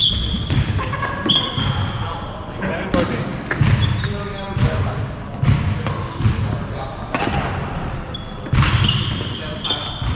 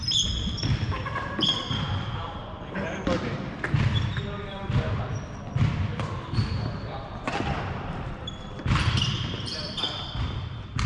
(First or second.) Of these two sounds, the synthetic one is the second